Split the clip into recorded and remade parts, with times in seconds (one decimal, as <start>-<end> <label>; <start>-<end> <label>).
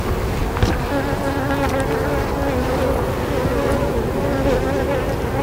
0.0-5.4 recorded